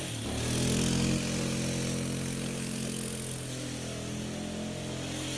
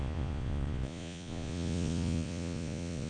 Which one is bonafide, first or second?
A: first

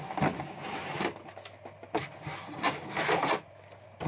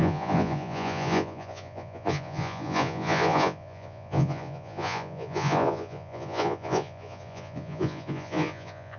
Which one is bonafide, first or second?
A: first